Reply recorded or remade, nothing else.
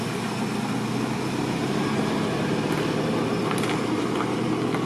recorded